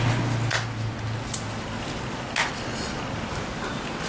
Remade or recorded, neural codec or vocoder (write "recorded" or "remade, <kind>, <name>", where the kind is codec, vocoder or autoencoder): recorded